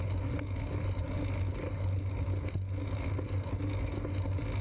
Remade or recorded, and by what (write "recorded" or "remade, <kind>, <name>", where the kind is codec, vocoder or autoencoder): recorded